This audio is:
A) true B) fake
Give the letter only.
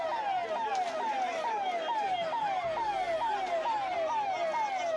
A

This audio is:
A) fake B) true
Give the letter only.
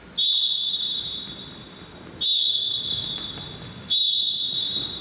B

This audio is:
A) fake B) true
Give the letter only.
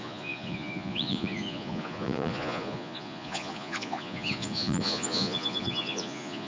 A